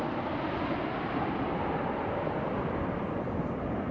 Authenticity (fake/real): real